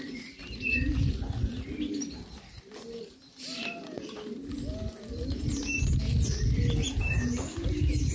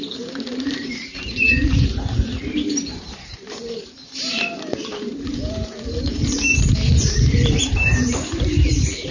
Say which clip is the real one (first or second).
first